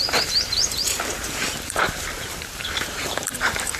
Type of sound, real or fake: fake